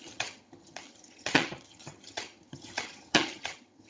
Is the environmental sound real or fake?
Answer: fake